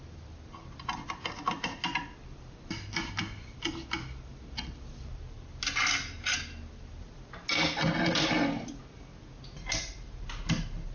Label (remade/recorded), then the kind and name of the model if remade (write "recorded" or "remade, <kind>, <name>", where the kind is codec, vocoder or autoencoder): recorded